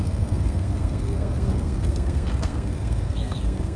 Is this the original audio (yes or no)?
no